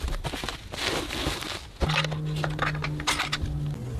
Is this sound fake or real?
real